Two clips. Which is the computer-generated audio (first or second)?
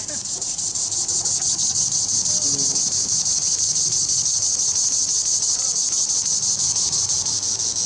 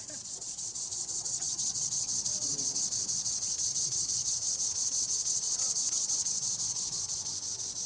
second